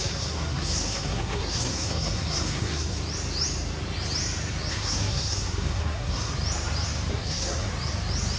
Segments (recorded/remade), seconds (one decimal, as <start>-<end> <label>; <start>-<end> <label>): 0.0-3.0 remade; 3.0-4.7 recorded; 4.7-6.3 remade; 6.3-7.1 recorded; 7.1-7.7 remade; 7.7-8.4 recorded